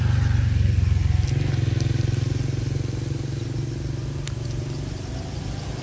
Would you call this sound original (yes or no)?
yes